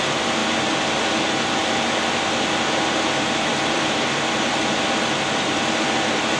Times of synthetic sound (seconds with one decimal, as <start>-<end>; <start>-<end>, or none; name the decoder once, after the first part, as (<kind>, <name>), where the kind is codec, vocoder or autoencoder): 0.0-0.4 (vocoder, BigVGAN v2); 2.3-6.4